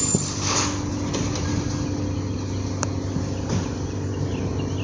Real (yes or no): yes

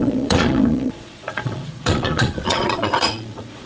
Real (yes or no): no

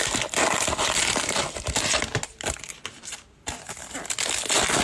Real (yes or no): yes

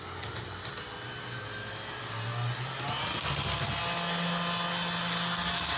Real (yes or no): yes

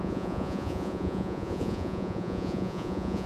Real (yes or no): no